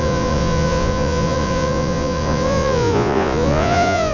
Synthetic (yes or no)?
yes